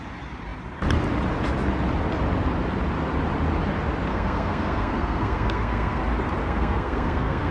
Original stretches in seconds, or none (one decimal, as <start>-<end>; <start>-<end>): 0.0-4.1; 6.0-6.4